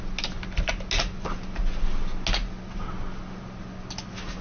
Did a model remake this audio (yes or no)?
no